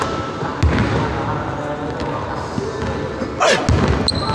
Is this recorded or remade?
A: recorded